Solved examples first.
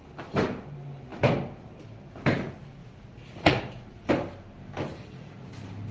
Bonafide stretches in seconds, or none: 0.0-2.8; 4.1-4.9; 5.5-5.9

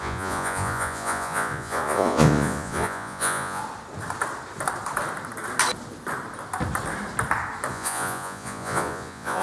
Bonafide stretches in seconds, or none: 3.6-7.7